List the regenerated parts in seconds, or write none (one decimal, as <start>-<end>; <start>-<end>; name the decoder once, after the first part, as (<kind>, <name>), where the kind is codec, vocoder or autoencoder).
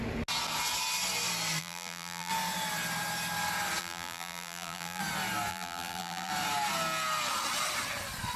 1.6-2.3 (vocoder, BigVGAN v2); 3.8-5.0; 5.5-6.3